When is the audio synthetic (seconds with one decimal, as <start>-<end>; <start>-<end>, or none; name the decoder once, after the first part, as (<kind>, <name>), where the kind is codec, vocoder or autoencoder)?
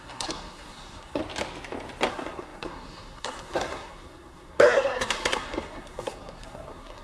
0.0-1.2 (codec, SNAC); 2.1-7.0